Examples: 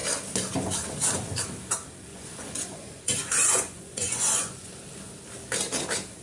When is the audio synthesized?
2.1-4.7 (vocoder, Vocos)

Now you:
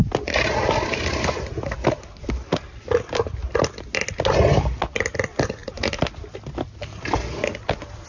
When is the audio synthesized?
none